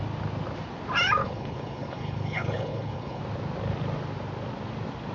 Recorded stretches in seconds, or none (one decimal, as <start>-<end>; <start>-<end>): 0.0-1.2; 3.2-5.1